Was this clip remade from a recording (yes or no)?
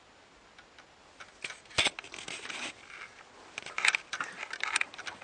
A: no